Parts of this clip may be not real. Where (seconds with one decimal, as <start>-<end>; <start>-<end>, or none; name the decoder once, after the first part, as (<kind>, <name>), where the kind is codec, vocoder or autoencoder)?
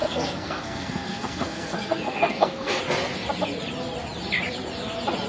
0.0-2.8 (codec, SNAC)